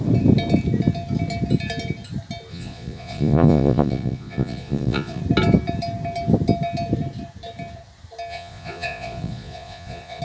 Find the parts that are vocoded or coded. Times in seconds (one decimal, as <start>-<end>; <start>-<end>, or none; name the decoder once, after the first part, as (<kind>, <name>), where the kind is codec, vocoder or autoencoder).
2.5-5.2 (vocoder, Vocos); 8.3-10.2